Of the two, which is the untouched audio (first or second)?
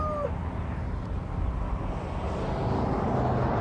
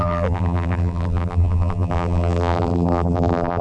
first